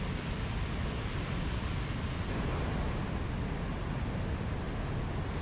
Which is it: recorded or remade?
recorded